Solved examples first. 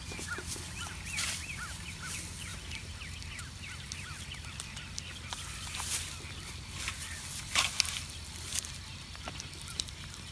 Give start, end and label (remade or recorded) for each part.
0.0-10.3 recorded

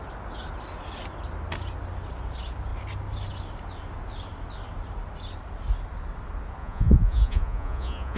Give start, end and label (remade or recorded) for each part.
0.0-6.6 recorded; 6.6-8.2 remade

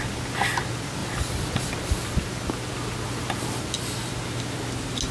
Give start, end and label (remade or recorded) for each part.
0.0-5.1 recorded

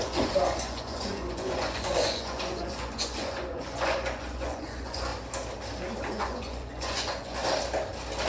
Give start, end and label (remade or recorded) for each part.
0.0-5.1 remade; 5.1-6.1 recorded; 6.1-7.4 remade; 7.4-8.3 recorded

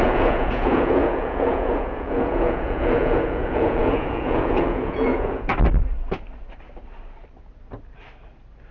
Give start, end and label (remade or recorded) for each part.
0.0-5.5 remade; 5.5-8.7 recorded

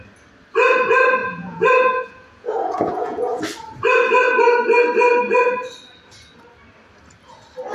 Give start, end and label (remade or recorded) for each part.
0.0-1.2 recorded; 1.2-3.4 remade; 3.4-7.7 recorded

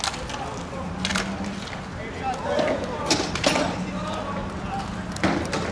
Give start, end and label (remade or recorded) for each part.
0.0-5.7 recorded